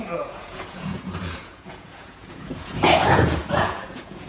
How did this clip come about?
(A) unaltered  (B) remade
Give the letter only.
B